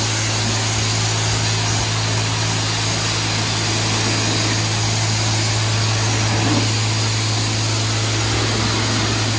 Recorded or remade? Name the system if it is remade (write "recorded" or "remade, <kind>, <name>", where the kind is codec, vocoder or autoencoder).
recorded